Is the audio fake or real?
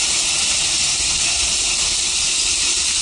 real